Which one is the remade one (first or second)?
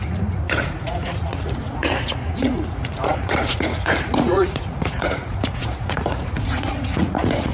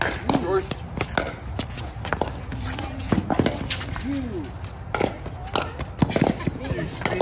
first